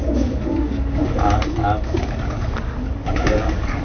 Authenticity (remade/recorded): remade